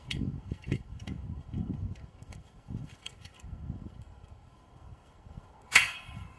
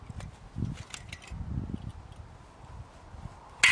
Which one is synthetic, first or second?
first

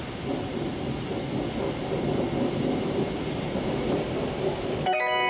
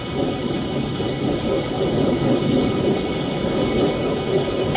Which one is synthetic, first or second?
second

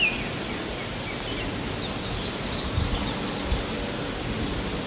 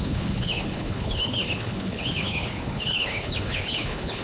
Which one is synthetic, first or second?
second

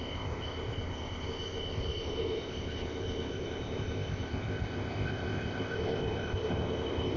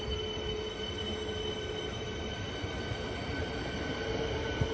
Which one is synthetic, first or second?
first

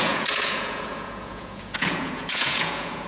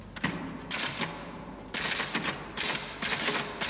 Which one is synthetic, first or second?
first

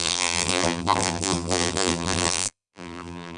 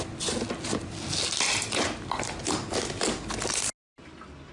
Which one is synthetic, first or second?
first